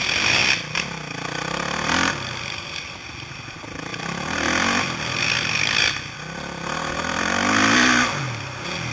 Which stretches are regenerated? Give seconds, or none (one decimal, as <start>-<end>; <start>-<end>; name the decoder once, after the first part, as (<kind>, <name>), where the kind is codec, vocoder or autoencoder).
none